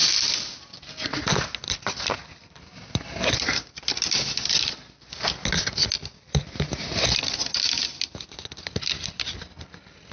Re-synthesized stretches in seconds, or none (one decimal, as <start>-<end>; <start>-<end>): 0.0-0.6